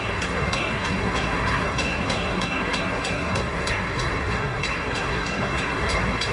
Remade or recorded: remade